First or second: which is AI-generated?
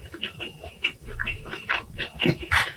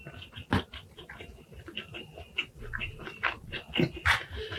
first